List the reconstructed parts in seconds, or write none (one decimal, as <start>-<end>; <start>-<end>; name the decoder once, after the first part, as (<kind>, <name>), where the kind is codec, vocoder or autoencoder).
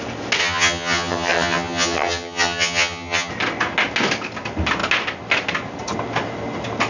0.4-3.3 (vocoder, HiFi-GAN)